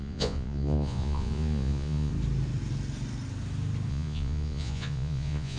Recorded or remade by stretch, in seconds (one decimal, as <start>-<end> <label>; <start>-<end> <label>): 0.0-2.1 remade; 2.1-3.9 recorded; 3.9-5.6 remade